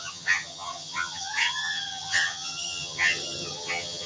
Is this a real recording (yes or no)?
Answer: no